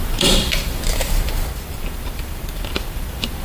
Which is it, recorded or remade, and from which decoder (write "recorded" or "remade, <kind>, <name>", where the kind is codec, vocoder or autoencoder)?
remade, vocoder, BigVGAN v2